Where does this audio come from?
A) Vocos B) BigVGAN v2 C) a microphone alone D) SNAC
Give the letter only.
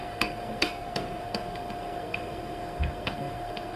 D